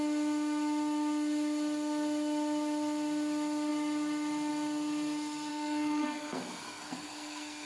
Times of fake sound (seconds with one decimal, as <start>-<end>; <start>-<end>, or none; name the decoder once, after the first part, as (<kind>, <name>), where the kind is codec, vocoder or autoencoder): 5.5-7.7 (codec, SNAC)